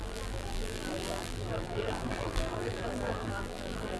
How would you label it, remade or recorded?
remade